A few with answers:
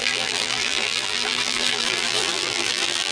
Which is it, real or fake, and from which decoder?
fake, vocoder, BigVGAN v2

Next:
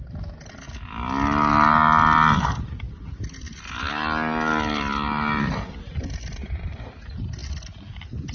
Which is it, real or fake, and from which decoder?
real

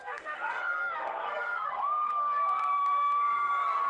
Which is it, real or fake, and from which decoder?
fake, codec, SNAC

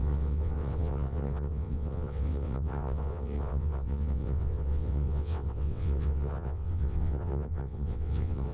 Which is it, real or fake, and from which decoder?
fake, vocoder, WaveNeXt